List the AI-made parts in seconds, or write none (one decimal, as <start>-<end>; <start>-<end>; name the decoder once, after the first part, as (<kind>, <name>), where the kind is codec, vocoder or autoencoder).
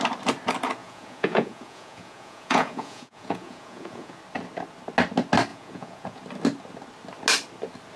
0.8-4.2 (vocoder, Vocos); 5.5-6.2